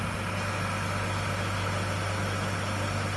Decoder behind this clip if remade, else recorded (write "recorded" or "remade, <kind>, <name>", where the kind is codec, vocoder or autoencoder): recorded